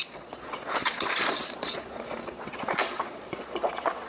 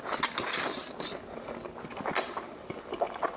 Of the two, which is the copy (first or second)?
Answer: first